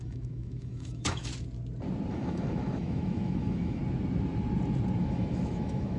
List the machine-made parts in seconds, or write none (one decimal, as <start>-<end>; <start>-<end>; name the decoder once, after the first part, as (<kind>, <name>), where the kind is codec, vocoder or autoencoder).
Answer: 0.0-1.3 (autoencoder, DAC-VAE); 2.1-3.8; 5.0-6.0